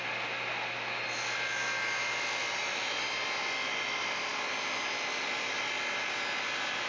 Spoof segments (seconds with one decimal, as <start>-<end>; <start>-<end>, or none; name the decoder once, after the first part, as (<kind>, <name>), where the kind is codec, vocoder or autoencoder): none